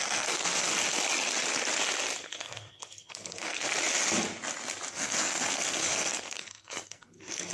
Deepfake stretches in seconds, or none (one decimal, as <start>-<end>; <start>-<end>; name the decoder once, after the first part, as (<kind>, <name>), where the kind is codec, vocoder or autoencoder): 0.0-0.7 (codec, SNAC); 2.2-3.7; 4.9-7.5